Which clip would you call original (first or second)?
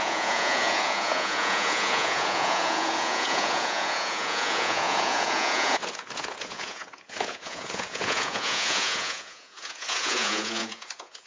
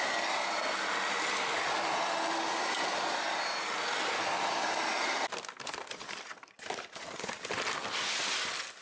second